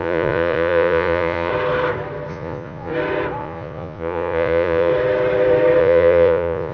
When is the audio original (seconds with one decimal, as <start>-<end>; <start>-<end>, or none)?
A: 1.5-2.3; 2.9-3.4; 4.9-5.8